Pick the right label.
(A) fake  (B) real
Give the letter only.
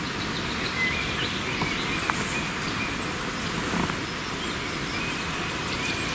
B